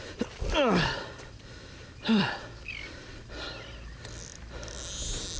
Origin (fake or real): real